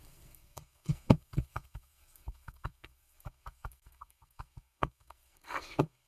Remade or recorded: remade